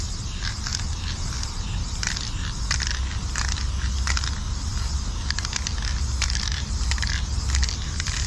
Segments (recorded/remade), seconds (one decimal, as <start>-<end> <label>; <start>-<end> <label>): 0.0-8.3 recorded